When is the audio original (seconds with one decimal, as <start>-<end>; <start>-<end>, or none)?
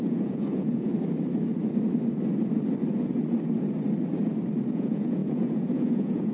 0.9-4.7